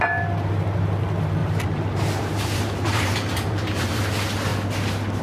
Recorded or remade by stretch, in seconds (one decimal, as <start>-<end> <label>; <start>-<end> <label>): 0.0-1.4 recorded; 1.4-4.0 remade; 4.0-5.2 recorded